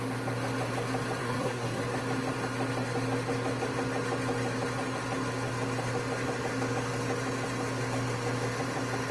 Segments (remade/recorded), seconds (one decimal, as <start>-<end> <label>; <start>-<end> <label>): 0.0-1.2 recorded; 1.2-1.8 remade; 1.8-9.1 recorded